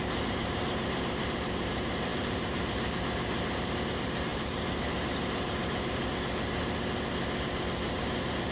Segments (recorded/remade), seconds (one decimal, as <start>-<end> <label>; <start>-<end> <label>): 0.0-6.1 remade; 6.1-8.0 recorded; 8.0-8.5 remade